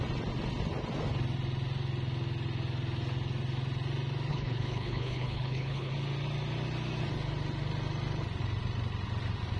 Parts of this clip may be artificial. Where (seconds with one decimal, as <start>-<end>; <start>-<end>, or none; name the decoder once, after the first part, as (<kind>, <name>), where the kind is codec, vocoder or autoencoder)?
4.3-5.9 (codec, HILCodec)